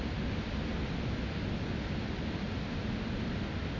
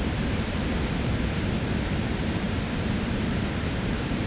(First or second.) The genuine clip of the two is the first